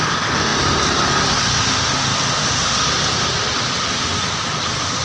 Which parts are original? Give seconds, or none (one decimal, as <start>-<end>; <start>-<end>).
0.0-0.5; 1.5-2.1; 4.3-5.0